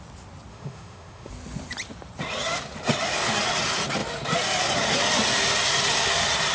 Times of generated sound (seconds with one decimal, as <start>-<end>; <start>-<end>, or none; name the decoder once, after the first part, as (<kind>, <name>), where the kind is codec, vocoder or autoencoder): 0.5-1.3 (autoencoder, DAC-VAE)